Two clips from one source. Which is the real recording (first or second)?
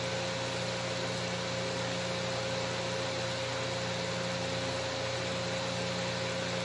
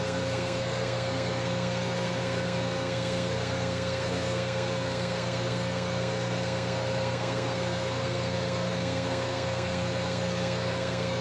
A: first